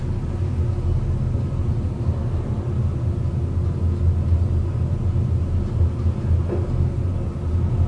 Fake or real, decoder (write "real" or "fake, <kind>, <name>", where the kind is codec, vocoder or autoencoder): real